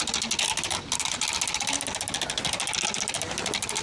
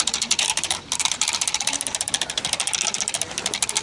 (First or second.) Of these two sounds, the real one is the first